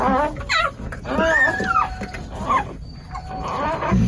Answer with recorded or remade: recorded